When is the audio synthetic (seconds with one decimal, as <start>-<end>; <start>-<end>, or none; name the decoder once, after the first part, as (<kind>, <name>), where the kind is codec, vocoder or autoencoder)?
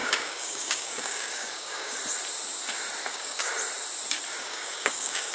0.0-2.0 (codec, DAC); 3.1-3.5; 4.4-5.3